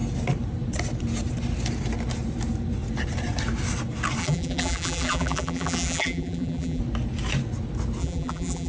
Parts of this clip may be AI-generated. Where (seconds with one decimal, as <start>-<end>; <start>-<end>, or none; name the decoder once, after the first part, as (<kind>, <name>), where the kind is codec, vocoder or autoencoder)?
4.2-6.8 (vocoder, BigVGAN v2); 8.0-8.7